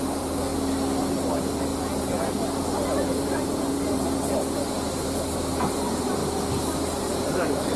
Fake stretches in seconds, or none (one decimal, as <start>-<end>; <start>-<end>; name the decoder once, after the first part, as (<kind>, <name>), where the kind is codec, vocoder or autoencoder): 0.0-0.5 (vocoder, BigVGAN v2); 1.1-6.2; 7.0-7.8